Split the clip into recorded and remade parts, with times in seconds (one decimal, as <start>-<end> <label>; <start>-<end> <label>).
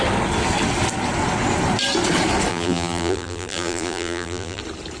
0.0-2.5 recorded; 2.5-4.6 remade; 4.6-5.0 recorded